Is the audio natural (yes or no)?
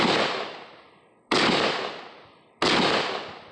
yes